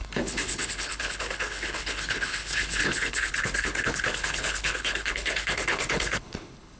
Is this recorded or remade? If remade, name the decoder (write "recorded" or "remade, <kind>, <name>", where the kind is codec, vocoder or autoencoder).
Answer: remade, codec, HILCodec